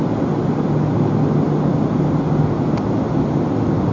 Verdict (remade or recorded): recorded